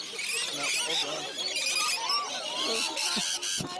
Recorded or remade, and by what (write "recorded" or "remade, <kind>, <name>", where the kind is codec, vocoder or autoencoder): recorded